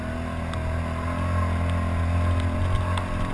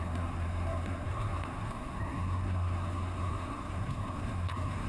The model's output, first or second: second